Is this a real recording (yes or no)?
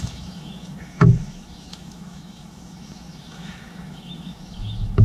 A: no